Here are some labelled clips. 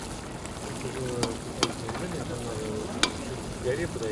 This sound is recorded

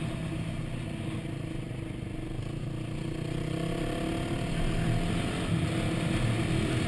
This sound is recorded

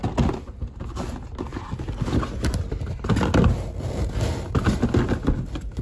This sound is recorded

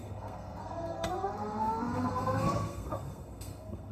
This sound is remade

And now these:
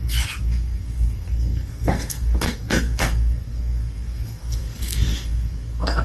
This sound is remade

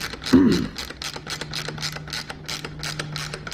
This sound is recorded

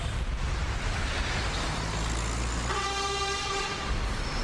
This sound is recorded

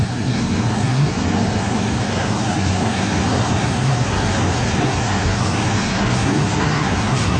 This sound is remade